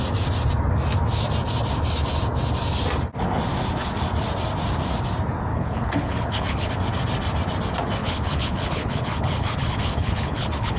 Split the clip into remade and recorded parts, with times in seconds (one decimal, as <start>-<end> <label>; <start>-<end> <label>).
0.0-5.5 recorded; 5.5-6.7 remade; 6.7-8.0 recorded; 8.0-10.8 remade